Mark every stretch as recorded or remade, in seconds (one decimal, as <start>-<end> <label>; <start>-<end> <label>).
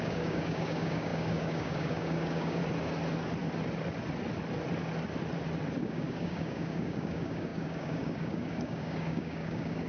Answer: 0.0-2.6 remade; 2.6-5.8 recorded; 5.8-9.9 remade